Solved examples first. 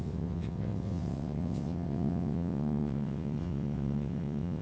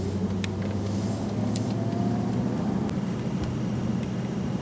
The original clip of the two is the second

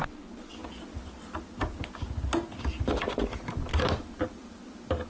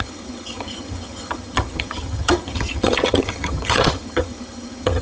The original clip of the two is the first